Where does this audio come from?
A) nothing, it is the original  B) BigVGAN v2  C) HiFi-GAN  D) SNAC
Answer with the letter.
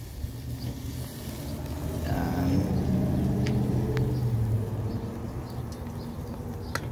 A